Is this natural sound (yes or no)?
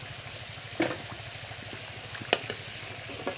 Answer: yes